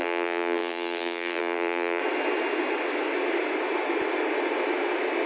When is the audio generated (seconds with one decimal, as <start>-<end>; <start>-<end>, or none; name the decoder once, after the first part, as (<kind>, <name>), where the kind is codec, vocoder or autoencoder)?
0.0-2.0 (vocoder, BigVGAN v2)